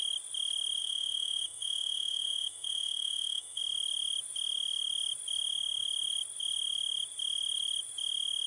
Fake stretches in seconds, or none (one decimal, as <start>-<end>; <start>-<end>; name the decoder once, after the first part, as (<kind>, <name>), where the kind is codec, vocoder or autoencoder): 0.8-3.6 (autoencoder, DAC-VAE)